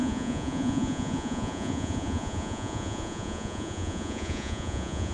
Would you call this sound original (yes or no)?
no